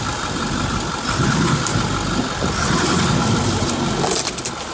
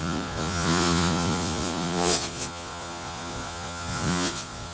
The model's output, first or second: second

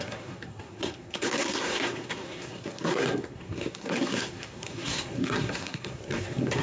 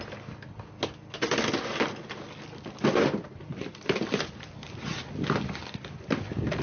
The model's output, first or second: first